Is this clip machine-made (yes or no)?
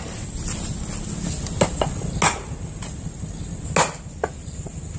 no